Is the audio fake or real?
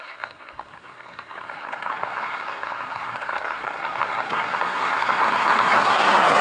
fake